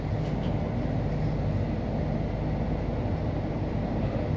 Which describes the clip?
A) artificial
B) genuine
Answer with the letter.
B